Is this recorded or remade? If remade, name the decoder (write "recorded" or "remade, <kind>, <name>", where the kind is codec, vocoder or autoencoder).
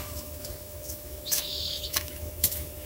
remade, autoencoder, DAC-VAE